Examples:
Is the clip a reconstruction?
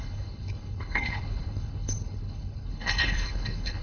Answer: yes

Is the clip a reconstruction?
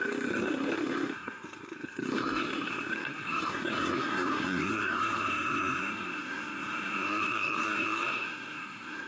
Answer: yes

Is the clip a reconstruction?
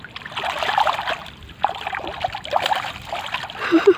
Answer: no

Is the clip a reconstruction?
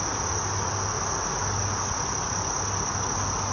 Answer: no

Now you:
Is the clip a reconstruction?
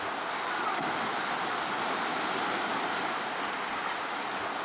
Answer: no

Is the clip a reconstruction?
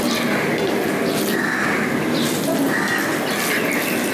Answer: no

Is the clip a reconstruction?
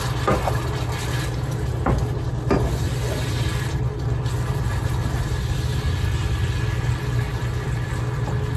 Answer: no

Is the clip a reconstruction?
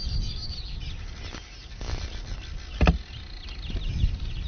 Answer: no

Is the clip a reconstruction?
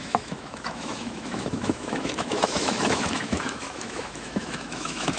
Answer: yes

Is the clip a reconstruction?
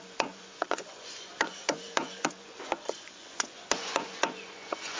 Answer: yes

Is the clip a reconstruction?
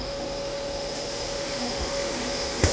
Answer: yes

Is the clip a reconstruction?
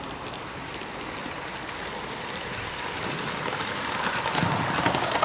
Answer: no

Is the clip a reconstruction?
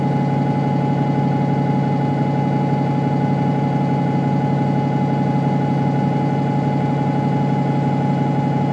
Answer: no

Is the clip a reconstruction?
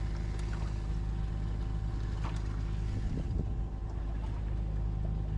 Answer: no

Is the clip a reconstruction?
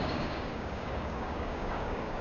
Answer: yes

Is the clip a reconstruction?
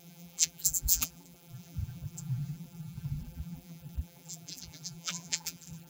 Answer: yes